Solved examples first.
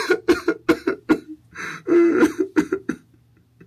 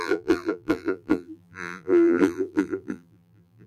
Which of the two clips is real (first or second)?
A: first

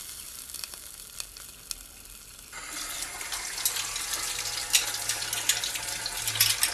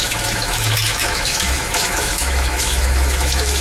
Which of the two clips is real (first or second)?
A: first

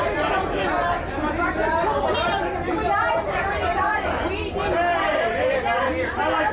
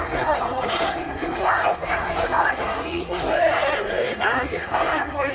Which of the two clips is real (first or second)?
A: first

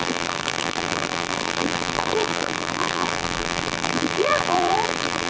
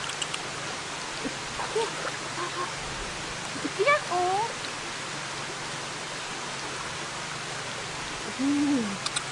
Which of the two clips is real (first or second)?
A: second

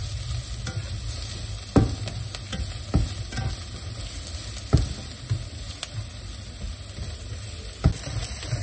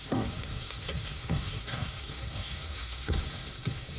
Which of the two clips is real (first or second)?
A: first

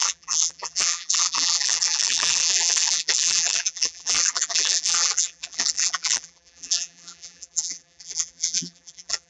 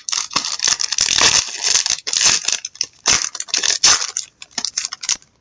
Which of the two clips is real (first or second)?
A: second